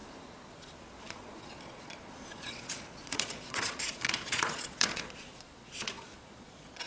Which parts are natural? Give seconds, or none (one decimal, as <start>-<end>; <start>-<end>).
0.0-1.0